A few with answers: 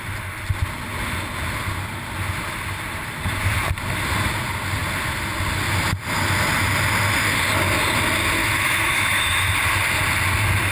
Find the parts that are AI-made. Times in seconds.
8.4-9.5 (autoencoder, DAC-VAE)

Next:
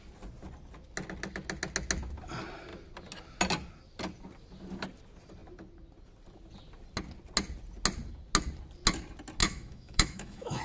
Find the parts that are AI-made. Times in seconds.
9.4-10.6 (autoencoder, DAC-VAE)

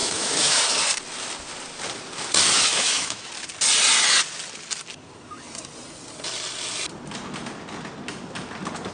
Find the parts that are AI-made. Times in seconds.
0.0-0.6 (autoencoder, DAC-VAE); 2.7-3.3